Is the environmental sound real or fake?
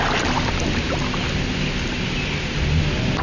real